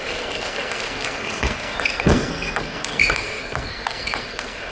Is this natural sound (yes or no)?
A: no